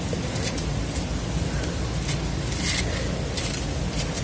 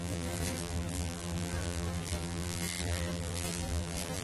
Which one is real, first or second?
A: first